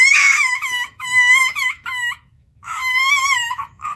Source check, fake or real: fake